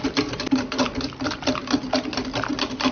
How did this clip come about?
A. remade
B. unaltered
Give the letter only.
B